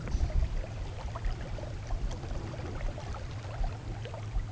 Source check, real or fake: real